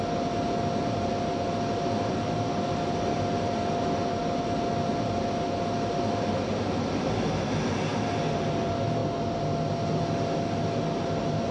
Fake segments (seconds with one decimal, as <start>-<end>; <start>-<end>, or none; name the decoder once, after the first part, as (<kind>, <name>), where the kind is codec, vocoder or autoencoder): none